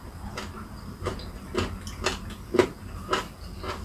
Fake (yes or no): no